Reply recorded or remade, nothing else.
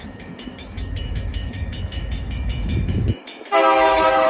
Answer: remade